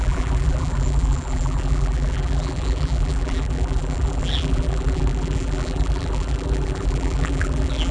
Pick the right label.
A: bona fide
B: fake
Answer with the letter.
B